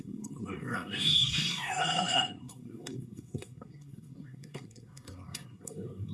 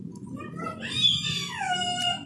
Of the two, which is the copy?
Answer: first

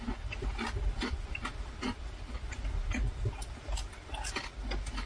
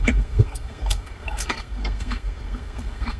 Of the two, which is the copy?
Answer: second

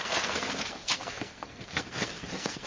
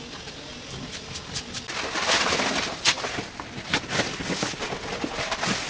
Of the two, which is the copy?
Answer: first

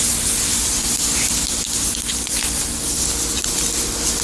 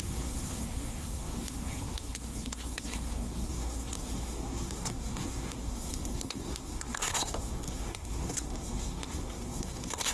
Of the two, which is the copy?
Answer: second